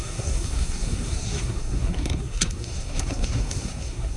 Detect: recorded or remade remade